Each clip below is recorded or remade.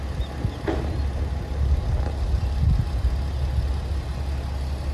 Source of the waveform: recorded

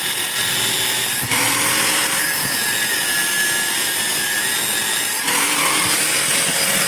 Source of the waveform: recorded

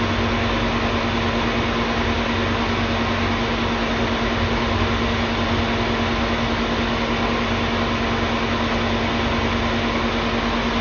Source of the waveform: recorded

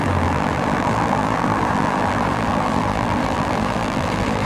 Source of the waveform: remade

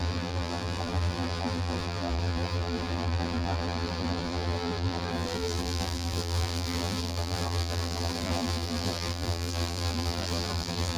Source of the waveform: remade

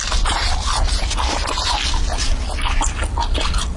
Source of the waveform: recorded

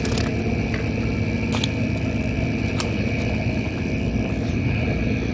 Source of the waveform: recorded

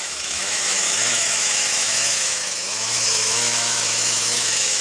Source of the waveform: remade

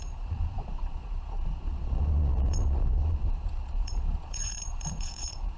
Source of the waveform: remade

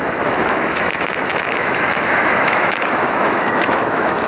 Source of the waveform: remade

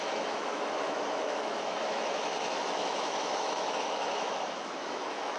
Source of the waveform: remade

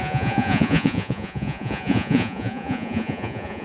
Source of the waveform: remade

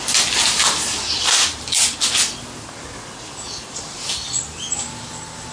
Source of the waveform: recorded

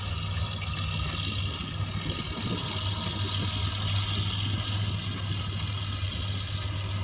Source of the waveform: recorded